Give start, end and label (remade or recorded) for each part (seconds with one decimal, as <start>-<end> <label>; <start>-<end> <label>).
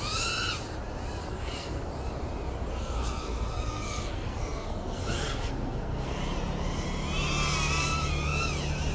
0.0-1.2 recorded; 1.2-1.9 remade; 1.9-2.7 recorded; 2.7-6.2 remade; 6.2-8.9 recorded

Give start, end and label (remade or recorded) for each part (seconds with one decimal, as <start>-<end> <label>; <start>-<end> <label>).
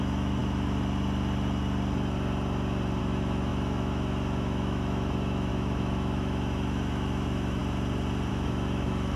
0.0-0.4 remade; 0.4-3.0 recorded; 3.0-7.6 remade; 7.6-8.3 recorded; 8.3-9.2 remade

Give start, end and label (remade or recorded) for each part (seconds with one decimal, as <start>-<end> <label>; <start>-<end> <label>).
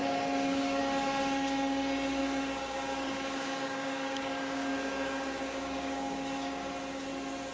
0.0-0.8 remade; 0.8-2.2 recorded; 2.2-6.7 remade; 6.7-7.5 recorded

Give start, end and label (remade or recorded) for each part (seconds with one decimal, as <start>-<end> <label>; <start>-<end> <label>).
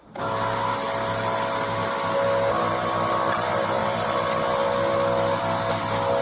0.0-6.2 recorded